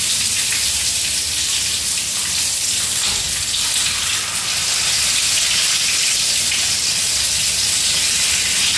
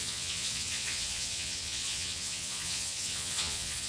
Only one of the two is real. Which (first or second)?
first